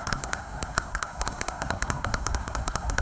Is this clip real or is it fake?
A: fake